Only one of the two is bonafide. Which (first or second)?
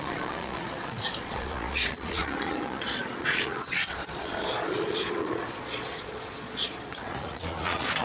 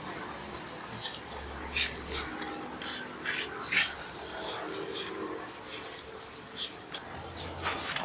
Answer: second